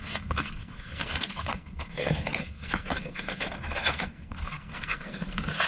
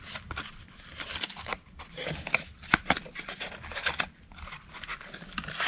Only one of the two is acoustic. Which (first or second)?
second